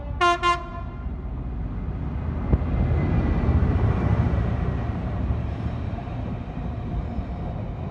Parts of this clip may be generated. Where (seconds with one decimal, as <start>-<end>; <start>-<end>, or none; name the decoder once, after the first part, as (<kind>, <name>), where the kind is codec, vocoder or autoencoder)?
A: 3.6-7.0 (vocoder, BigVGAN v2)